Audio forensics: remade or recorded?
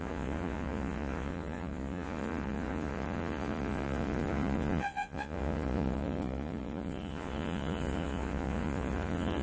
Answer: remade